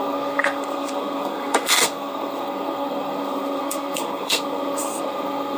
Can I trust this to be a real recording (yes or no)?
no